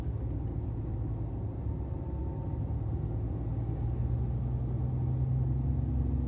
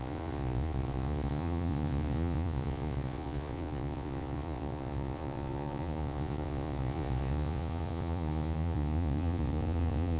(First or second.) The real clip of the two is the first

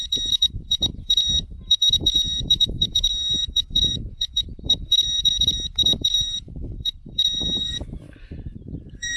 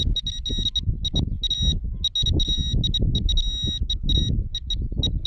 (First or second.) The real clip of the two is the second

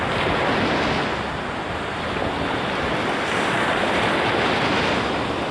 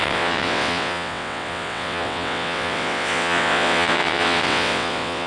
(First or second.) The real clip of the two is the first